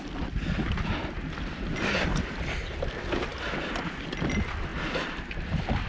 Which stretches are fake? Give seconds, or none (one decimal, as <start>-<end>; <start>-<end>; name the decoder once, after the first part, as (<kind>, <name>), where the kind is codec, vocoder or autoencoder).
none